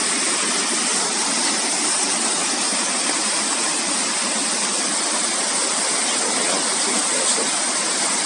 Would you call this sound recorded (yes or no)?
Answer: yes